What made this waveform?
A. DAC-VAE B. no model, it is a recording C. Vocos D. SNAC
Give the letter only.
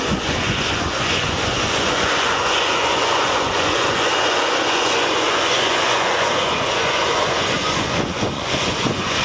C